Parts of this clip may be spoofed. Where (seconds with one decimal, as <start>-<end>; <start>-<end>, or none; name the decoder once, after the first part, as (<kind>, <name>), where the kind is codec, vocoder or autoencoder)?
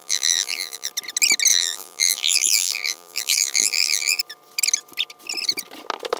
0.0-0.9 (vocoder, BigVGAN v2); 1.5-4.2